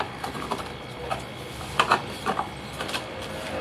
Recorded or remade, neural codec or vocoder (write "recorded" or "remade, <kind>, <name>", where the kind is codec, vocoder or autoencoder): remade, vocoder, BigVGAN v2